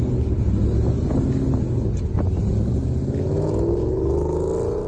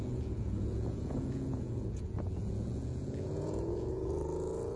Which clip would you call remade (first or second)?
second